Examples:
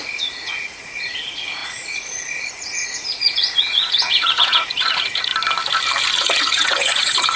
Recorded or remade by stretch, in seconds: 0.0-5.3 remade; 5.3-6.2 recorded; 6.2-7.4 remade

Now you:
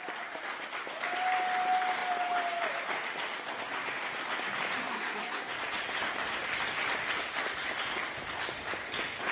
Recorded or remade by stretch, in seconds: 0.0-4.9 recorded; 4.9-5.5 remade; 5.5-9.3 recorded

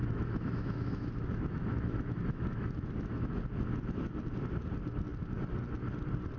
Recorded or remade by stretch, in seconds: 0.0-3.3 remade; 3.3-6.4 recorded

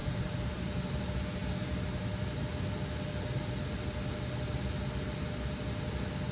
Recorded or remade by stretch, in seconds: 0.0-1.0 remade; 1.0-6.3 recorded

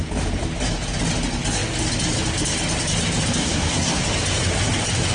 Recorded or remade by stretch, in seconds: 0.0-3.4 recorded; 3.4-4.0 remade; 4.0-5.1 recorded

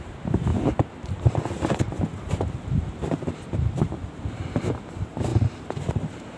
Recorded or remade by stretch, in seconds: 0.0-0.5 remade; 0.5-4.3 recorded; 4.3-6.4 remade

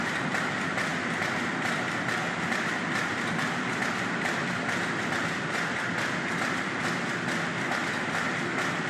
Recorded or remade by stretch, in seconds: 0.0-8.9 recorded

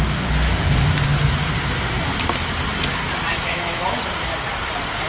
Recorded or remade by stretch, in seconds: 0.0-3.3 recorded; 3.3-4.0 remade; 4.0-5.1 recorded